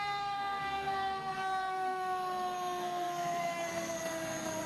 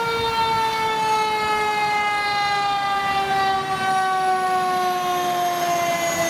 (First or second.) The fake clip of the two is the first